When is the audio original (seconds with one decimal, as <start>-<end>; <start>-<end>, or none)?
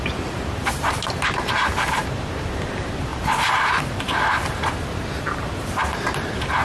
none